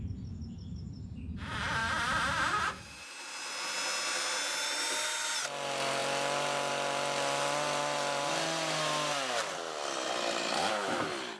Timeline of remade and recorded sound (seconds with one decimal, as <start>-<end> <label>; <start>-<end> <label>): 0.0-1.8 recorded; 1.8-3.3 remade; 3.3-6.0 recorded; 6.0-6.7 remade; 6.7-11.4 recorded